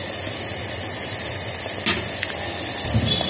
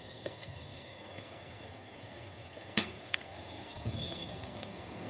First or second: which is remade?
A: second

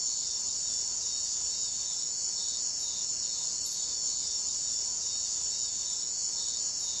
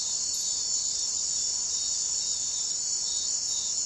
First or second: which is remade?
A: first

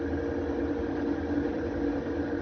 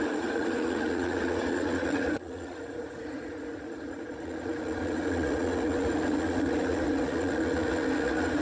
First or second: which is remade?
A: second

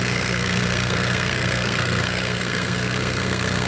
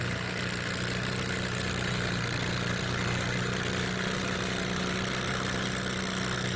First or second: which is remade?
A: first